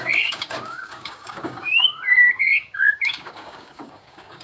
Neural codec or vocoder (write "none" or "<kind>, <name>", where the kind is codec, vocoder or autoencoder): codec, DAC